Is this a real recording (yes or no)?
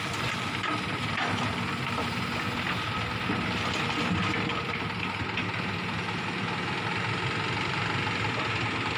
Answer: yes